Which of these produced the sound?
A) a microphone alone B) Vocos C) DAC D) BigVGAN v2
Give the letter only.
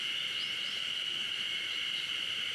A